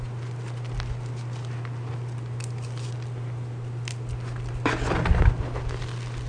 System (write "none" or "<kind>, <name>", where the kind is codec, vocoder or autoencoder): none